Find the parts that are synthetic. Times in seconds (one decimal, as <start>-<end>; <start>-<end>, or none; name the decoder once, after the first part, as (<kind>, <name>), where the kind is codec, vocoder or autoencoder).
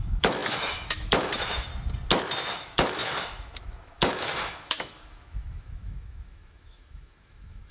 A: 0.0-1.7 (autoencoder, DAC-VAE); 2.5-7.7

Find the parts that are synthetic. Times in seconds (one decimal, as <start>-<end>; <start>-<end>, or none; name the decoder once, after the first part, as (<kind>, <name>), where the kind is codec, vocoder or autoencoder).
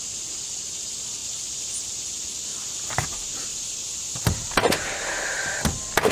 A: 1.2-1.9 (vocoder, BigVGAN v2); 3.5-4.5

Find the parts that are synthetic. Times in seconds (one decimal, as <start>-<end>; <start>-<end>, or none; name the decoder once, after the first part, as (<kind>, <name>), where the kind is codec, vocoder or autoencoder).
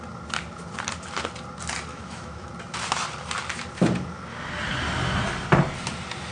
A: 1.9-2.5 (autoencoder, DAC-VAE)